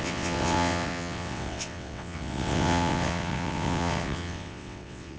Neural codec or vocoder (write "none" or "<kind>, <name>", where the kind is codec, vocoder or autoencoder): vocoder, WaveNeXt